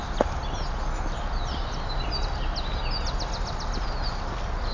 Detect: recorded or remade recorded